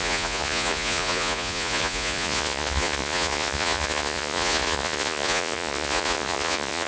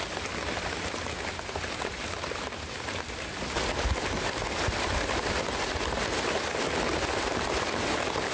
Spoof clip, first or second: first